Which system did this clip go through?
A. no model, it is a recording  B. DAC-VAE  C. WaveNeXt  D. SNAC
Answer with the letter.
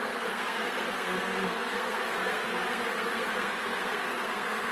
D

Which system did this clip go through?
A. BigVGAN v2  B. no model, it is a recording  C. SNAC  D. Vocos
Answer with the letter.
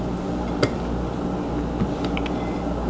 B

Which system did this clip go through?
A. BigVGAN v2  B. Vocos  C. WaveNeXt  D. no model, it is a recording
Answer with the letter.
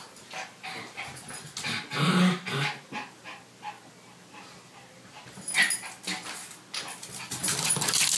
D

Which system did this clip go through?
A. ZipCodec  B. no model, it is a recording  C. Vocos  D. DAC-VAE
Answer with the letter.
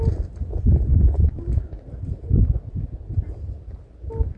B